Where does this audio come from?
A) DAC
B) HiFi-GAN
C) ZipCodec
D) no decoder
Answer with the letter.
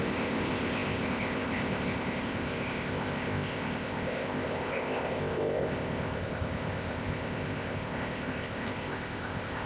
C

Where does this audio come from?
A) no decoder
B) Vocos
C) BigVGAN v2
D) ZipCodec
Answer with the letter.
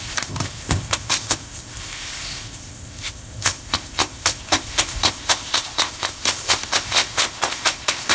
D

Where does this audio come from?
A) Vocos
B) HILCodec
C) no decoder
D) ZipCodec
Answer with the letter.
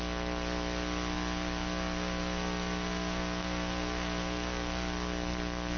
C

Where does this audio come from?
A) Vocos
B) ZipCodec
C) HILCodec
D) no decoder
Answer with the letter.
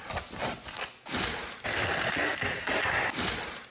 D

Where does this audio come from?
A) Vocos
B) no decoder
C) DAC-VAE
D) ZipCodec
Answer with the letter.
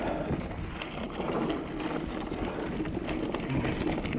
B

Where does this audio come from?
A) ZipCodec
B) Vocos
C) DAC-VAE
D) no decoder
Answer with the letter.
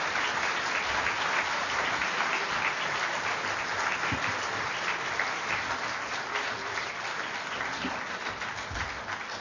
D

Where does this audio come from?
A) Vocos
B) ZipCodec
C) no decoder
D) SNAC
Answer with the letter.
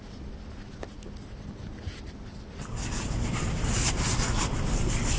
C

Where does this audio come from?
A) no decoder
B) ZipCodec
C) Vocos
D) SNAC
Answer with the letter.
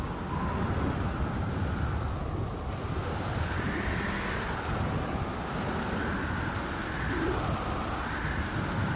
A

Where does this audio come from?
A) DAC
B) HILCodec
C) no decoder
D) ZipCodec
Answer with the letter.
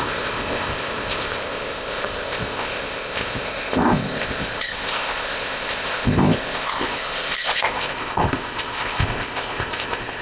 D